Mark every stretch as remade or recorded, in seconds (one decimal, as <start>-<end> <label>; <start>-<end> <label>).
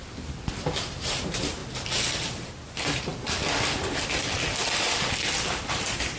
0.0-0.8 recorded; 0.8-1.6 remade; 1.6-2.1 recorded; 2.1-3.1 remade; 3.1-5.6 recorded; 5.6-6.2 remade